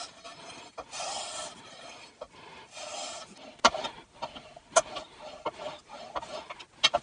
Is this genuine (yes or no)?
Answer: yes